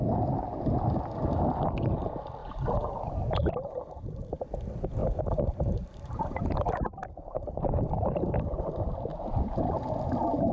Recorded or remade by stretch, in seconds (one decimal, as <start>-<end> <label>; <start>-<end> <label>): 0.0-2.4 recorded; 2.4-3.3 remade; 3.3-5.0 recorded; 5.0-8.3 remade; 8.3-9.1 recorded; 9.1-9.8 remade; 9.8-10.5 recorded